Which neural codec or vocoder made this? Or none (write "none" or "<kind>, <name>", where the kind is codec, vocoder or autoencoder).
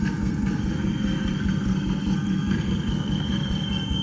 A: codec, SNAC